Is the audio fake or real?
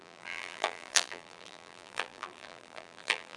fake